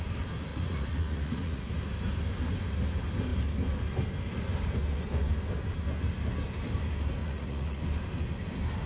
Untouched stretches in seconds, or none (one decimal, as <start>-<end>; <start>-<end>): 0.0-0.5; 1.8-7.2; 7.8-8.9